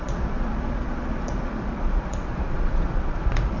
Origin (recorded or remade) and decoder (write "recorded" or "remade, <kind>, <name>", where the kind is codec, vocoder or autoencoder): remade, vocoder, Vocos